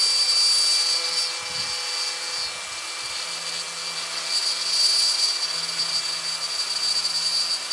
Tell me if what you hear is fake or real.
real